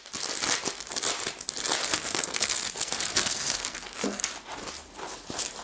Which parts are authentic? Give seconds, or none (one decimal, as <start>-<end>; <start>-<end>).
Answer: 0.0-1.8; 4.3-5.6